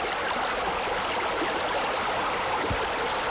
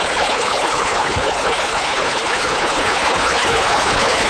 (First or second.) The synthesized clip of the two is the second